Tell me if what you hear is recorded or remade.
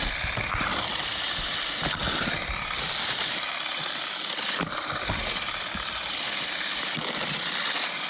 recorded